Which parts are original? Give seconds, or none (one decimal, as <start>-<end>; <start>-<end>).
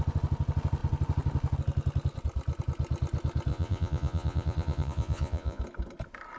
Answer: 0.0-3.5; 5.6-6.4